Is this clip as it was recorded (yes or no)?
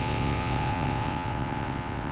no